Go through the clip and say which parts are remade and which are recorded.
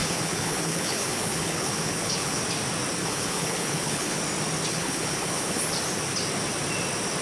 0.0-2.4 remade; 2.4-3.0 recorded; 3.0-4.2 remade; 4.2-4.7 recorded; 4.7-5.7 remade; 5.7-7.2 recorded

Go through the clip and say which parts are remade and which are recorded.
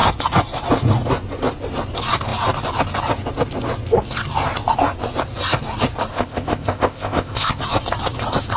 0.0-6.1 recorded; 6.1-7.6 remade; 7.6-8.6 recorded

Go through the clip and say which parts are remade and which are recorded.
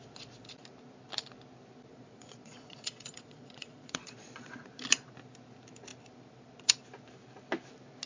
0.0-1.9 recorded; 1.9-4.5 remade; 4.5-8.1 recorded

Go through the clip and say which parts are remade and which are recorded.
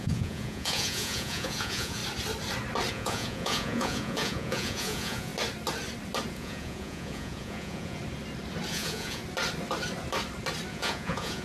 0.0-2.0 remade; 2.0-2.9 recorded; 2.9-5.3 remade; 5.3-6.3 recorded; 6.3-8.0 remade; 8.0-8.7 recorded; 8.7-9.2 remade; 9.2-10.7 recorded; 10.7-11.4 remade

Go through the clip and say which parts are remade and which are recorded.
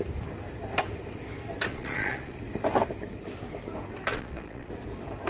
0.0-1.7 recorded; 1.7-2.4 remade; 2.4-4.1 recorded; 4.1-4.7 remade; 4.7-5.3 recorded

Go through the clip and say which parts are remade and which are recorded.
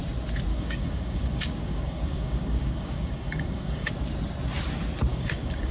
0.0-0.5 recorded; 0.5-3.9 remade; 3.9-5.1 recorded; 5.1-5.7 remade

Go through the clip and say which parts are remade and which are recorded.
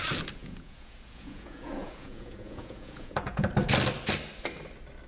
0.0-0.4 recorded; 0.4-3.5 remade; 3.5-5.1 recorded